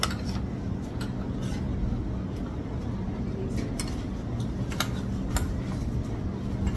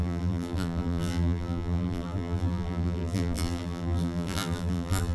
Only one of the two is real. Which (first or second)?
first